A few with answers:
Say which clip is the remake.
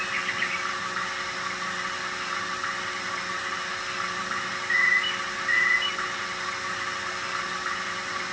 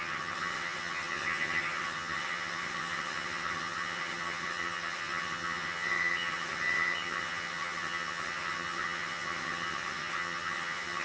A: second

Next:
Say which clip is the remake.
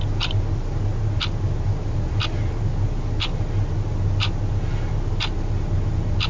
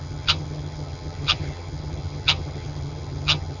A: second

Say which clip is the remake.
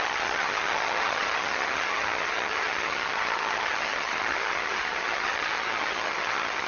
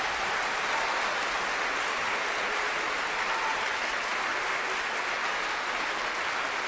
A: first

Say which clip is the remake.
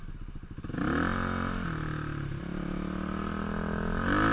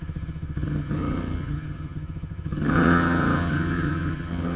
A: second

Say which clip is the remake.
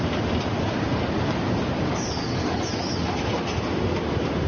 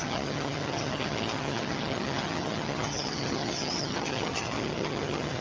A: second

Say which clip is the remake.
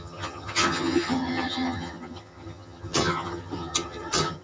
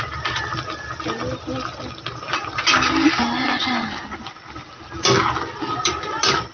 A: first